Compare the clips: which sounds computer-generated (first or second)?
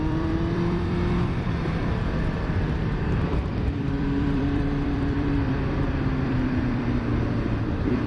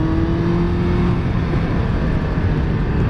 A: first